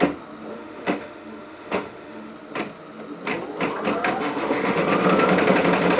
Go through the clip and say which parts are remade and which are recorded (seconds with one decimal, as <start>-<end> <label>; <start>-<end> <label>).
0.0-0.5 recorded; 0.5-2.3 remade; 2.3-4.2 recorded; 4.2-4.8 remade; 4.8-6.0 recorded